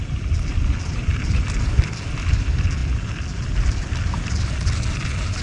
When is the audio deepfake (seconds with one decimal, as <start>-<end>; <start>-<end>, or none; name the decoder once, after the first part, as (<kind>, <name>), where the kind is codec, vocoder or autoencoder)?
none